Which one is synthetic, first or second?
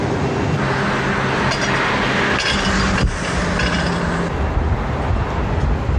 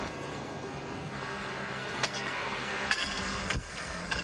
second